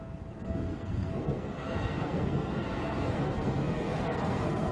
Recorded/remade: remade